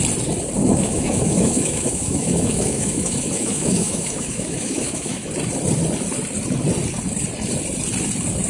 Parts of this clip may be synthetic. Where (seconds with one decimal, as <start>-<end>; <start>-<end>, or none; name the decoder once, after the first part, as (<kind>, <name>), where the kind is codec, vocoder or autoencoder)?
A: 0.6-5.3 (autoencoder, DAC-VAE)